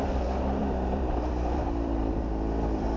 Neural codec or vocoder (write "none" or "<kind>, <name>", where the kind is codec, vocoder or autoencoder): vocoder, BigVGAN v2